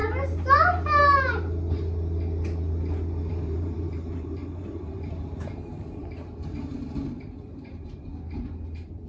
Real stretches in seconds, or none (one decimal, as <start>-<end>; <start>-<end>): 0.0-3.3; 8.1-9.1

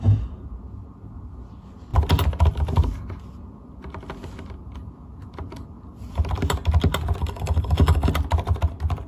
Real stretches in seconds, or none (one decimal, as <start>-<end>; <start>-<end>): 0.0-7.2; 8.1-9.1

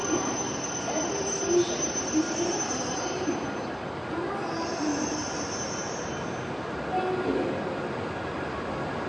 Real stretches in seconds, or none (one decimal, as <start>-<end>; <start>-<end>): 0.0-9.1

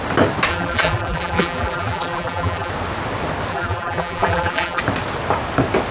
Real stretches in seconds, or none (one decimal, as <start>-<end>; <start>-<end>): 0.0-0.5; 2.7-3.5; 4.8-5.9

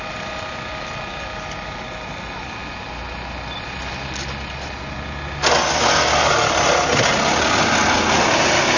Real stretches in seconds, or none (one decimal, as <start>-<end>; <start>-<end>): 0.0-8.8